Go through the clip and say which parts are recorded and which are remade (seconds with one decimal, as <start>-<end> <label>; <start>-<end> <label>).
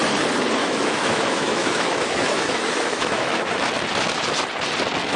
0.0-0.6 recorded; 0.6-3.7 remade; 3.7-5.2 recorded